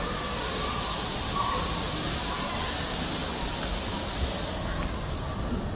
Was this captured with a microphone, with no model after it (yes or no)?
yes